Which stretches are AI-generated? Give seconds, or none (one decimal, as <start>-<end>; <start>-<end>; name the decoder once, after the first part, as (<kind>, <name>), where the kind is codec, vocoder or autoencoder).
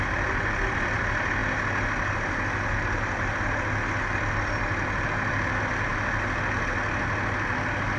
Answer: none